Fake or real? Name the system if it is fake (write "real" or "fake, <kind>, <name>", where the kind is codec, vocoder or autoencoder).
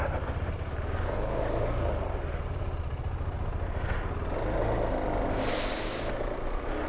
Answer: real